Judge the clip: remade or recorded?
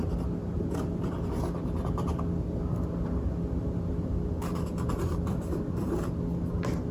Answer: recorded